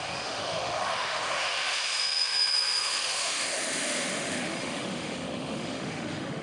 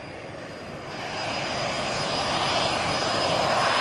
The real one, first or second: second